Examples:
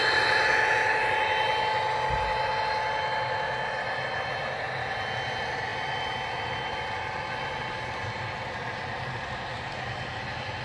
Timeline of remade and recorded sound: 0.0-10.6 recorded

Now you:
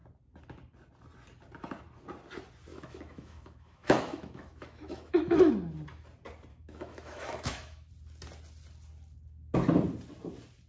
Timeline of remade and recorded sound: 0.0-2.7 recorded; 2.7-5.5 remade; 5.5-6.5 recorded; 6.5-7.9 remade; 7.9-10.7 recorded